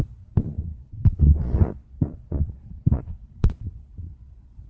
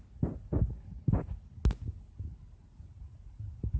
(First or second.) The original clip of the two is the second